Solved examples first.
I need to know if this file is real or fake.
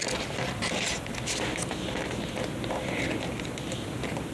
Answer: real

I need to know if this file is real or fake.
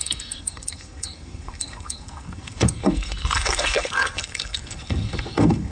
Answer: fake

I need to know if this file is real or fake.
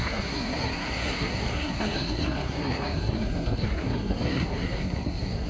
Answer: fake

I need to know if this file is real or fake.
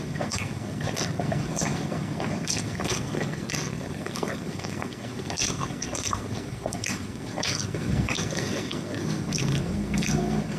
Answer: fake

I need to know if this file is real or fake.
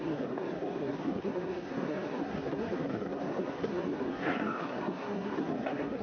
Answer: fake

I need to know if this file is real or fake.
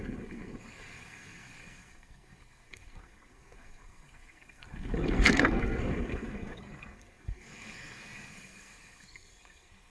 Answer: fake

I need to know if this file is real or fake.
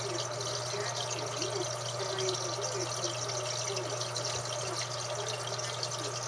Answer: real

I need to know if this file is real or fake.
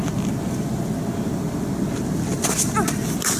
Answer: real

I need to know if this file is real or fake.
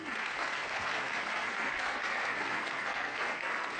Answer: fake